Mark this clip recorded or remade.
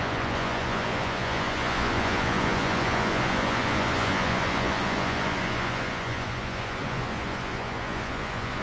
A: remade